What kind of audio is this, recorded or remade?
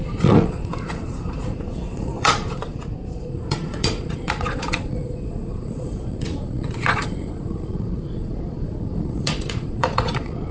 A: remade